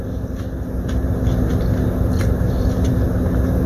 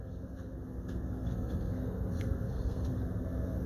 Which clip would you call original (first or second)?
first